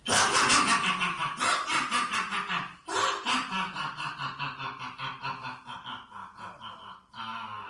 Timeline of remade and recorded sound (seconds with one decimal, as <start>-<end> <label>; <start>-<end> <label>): 0.0-1.1 recorded; 1.1-4.8 remade; 4.8-7.7 recorded